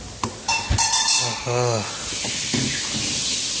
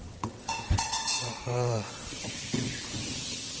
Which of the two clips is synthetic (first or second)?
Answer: second